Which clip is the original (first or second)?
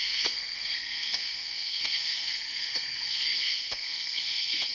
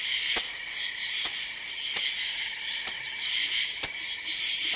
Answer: second